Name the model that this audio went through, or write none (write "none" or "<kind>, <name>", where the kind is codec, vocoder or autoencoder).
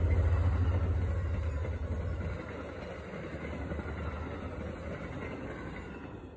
none